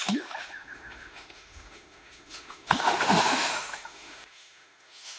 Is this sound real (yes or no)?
no